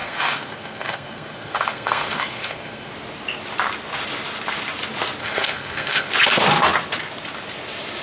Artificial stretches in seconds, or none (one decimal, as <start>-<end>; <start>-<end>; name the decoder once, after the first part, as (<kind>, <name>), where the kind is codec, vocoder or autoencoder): 0.0-2.9 (codec, SNAC); 5.2-6.1